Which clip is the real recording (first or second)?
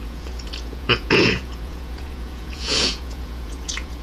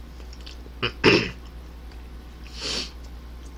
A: second